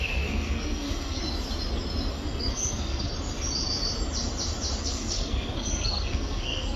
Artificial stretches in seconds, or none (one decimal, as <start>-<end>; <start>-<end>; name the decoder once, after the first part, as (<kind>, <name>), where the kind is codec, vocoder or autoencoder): 0.0-1.2 (codec, SNAC); 2.1-3.1; 4.8-6.8